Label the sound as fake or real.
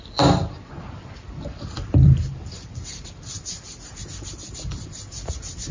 fake